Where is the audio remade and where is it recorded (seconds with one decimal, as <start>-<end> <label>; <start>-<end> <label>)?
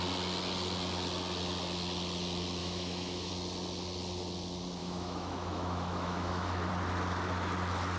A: 0.0-2.6 recorded; 2.6-3.3 remade; 3.3-4.8 recorded; 4.8-6.7 remade; 6.7-8.0 recorded